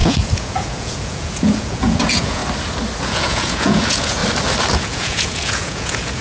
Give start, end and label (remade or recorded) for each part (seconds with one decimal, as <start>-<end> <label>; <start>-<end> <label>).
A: 0.0-2.4 remade; 2.4-3.0 recorded; 3.0-4.2 remade; 4.2-4.7 recorded; 4.7-6.2 remade

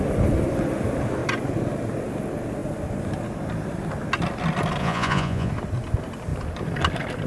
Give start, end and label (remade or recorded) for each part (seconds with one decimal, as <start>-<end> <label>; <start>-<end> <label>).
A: 0.0-4.8 recorded; 4.8-5.5 remade; 5.5-7.3 recorded

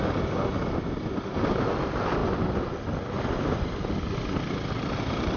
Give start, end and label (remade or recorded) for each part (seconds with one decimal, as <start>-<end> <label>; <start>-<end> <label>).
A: 0.0-5.4 recorded

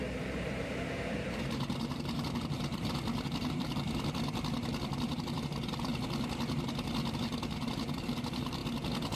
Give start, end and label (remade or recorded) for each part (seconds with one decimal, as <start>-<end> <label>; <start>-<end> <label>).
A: 0.0-2.7 remade; 2.7-3.4 recorded; 3.4-5.9 remade; 5.9-7.1 recorded; 7.1-8.6 remade; 8.6-9.2 recorded

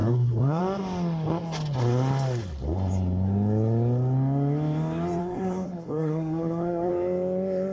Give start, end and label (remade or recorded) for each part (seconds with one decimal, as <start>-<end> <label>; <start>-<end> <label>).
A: 0.0-0.6 remade; 0.6-5.2 recorded; 5.2-6.9 remade; 6.9-7.7 recorded

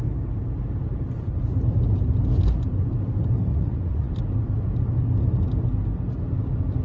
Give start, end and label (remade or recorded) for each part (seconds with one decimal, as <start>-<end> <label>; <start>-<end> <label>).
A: 0.0-3.5 recorded; 3.5-4.1 remade; 4.1-6.8 recorded

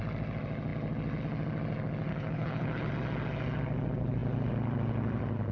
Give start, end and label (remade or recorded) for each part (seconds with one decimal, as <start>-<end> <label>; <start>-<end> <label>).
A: 0.0-2.1 recorded; 2.1-2.9 remade; 2.9-5.5 recorded

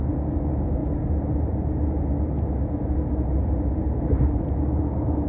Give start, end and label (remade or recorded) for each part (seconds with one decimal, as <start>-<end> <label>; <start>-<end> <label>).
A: 0.0-5.3 recorded